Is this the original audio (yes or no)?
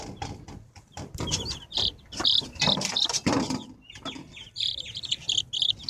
no